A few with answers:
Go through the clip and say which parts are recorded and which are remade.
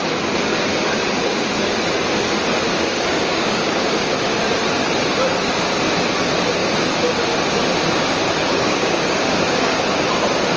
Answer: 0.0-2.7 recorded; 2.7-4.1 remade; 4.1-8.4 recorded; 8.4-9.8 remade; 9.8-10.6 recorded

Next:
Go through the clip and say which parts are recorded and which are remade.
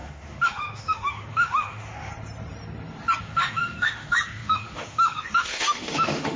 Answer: 0.0-2.1 remade; 2.1-3.2 recorded; 3.2-6.4 remade